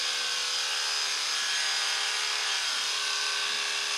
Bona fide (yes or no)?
yes